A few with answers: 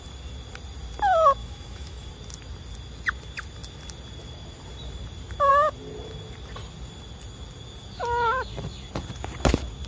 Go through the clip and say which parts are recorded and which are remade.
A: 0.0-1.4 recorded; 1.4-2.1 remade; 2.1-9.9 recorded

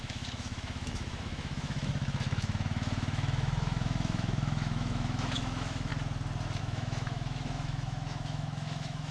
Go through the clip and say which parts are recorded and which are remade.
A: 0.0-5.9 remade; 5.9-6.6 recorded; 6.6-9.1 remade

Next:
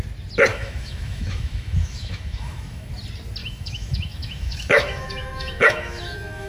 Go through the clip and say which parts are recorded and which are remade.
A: 0.0-0.5 recorded; 0.5-2.9 remade; 2.9-3.4 recorded; 3.4-6.5 remade

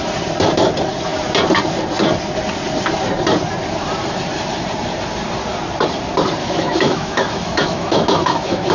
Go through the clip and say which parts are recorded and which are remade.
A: 0.0-6.4 recorded; 6.4-8.7 remade